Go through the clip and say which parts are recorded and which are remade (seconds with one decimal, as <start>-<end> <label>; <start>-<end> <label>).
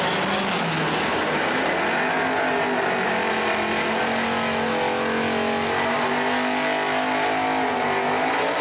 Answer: 0.0-8.6 recorded